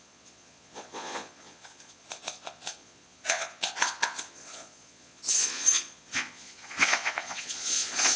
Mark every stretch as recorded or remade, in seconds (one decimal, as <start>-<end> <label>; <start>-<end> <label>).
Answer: 0.0-8.2 remade